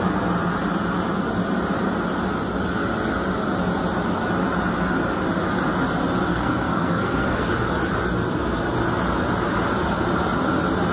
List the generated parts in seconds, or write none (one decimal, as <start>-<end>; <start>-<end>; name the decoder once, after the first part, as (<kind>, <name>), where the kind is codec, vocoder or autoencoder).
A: 6.3-7.5 (codec, SNAC)

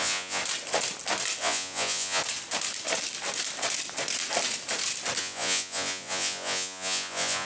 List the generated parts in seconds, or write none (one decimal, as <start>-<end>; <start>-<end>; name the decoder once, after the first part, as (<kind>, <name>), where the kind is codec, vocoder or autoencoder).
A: 0.0-0.4 (vocoder, Vocos); 1.4-2.2; 5.2-7.4

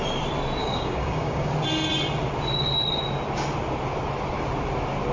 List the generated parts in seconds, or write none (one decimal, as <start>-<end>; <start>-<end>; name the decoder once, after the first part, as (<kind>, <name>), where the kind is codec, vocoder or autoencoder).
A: 0.6-1.5 (codec, DAC)